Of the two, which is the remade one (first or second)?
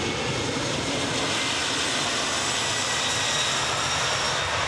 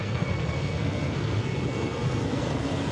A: second